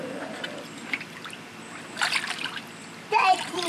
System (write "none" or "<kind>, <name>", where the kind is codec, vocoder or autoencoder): none